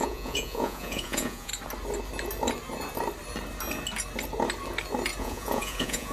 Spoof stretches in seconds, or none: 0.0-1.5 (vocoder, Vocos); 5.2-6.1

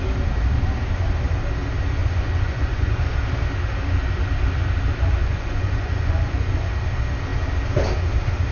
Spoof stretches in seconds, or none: 2.0-3.1 (vocoder, Vocos); 5.2-6.7

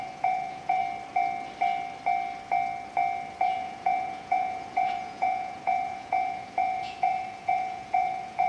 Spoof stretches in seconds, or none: 0.0-0.8 (vocoder, Vocos); 3.4-8.5

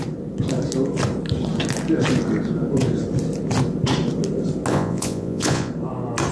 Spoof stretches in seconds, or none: 4.7-5.7 (vocoder, Vocos)

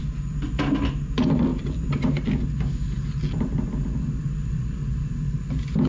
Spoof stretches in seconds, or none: none

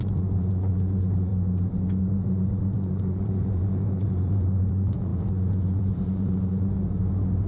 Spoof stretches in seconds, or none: 0.0-1.3 (vocoder, Vocos); 2.0-7.5